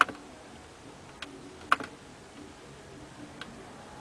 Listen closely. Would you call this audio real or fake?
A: real